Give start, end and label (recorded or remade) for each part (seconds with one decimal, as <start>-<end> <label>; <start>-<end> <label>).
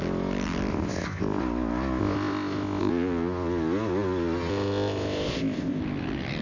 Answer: 0.0-0.7 recorded; 0.7-1.4 remade; 1.4-2.0 recorded; 2.0-2.9 remade; 2.9-4.5 recorded; 4.5-5.8 remade; 5.8-6.4 recorded